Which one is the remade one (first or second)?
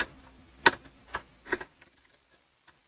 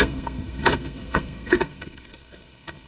second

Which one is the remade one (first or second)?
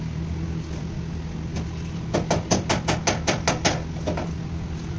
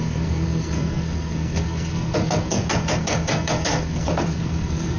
second